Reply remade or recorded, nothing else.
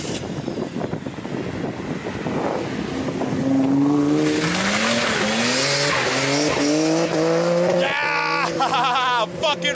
recorded